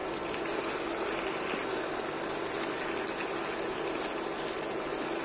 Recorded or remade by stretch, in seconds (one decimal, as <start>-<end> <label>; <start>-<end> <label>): 0.0-5.2 recorded